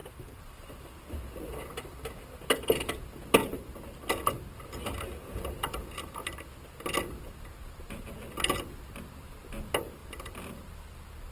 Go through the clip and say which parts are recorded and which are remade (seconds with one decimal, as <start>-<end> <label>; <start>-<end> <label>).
0.0-0.9 remade; 0.9-10.0 recorded; 10.0-10.7 remade; 10.7-11.3 recorded